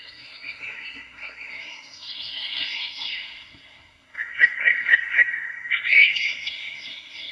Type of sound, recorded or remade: remade